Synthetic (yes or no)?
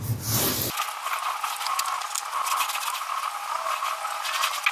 no